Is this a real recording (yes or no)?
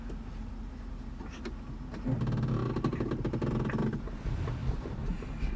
yes